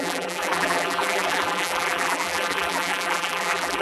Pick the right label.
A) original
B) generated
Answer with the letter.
B